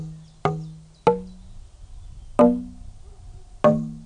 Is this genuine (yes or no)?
yes